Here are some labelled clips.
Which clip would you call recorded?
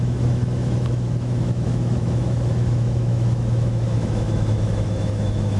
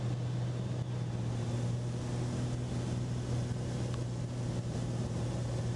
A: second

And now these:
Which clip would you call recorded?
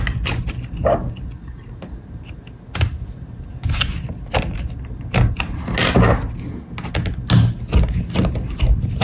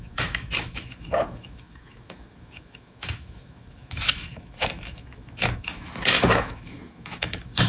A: first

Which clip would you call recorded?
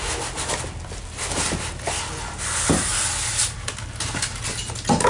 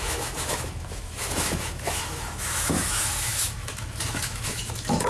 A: first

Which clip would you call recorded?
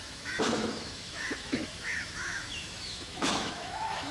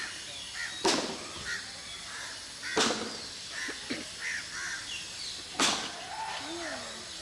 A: second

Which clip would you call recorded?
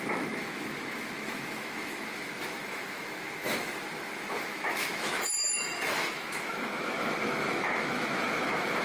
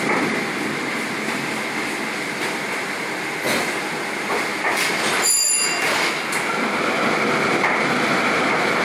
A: second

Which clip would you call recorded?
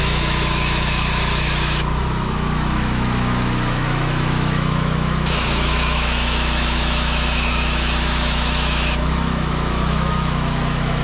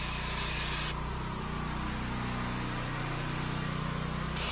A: second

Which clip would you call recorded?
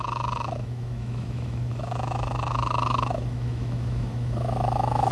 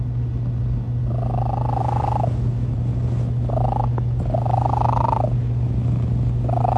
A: second